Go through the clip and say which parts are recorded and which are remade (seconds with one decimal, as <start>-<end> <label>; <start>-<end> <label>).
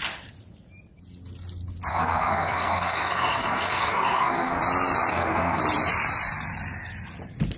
0.0-1.9 recorded; 1.9-4.6 remade; 4.6-5.1 recorded; 5.1-5.6 remade; 5.6-7.6 recorded